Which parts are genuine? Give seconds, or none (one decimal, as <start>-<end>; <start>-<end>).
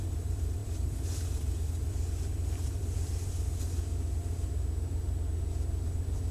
3.8-6.3